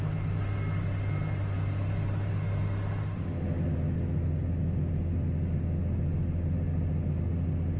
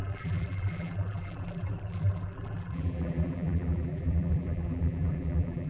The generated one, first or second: second